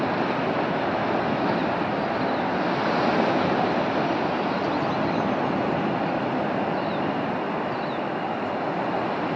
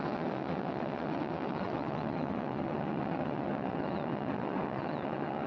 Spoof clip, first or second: second